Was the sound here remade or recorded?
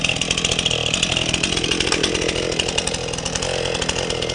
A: recorded